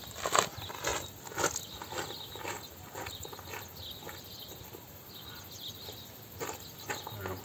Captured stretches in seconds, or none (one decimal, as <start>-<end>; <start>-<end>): 0.0-7.4